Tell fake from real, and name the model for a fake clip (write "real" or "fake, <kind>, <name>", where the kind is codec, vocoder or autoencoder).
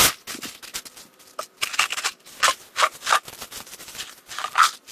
real